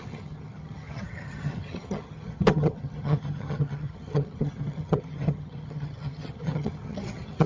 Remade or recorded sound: remade